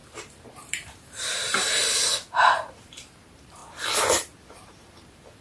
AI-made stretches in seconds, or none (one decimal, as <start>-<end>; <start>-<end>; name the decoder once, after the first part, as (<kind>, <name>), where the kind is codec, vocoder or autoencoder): 0.0-1.8 (vocoder, BigVGAN v2); 2.6-3.6; 4.4-5.4